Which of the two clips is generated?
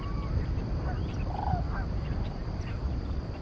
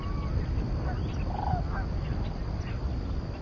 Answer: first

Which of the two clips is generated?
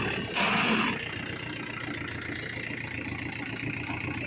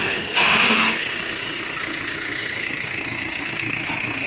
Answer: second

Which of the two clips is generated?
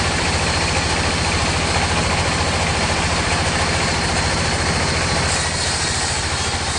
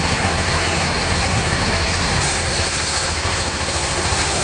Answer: second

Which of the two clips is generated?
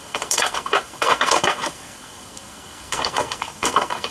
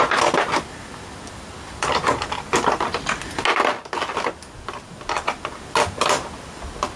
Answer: first